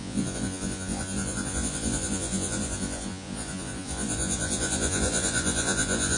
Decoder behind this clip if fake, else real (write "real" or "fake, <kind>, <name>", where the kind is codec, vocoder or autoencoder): fake, vocoder, Vocos